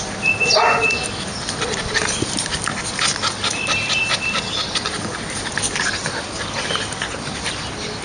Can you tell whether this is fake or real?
real